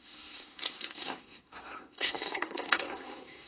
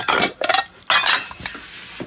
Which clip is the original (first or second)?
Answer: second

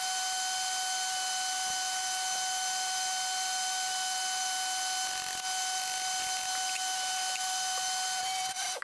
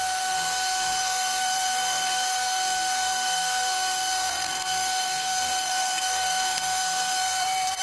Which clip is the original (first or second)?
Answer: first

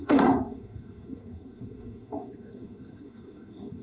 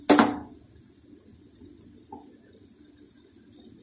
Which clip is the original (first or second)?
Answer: second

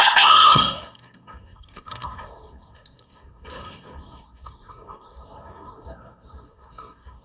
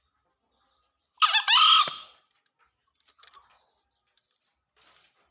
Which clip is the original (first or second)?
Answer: second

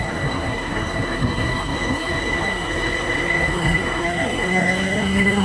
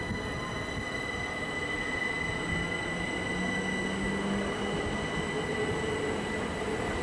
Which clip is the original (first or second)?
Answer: second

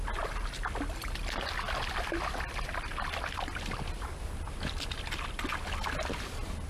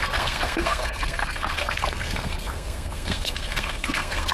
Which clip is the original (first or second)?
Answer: first